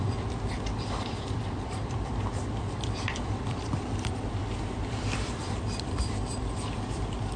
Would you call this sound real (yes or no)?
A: no